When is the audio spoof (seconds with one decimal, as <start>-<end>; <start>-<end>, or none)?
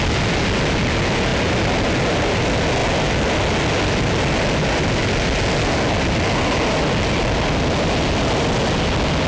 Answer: none